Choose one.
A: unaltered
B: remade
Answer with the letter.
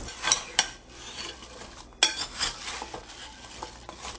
A